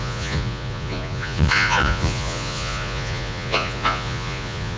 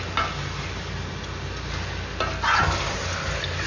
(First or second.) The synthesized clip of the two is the first